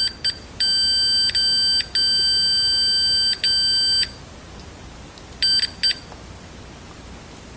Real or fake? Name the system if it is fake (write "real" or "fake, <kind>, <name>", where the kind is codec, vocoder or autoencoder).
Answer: real